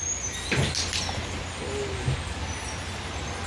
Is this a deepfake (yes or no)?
no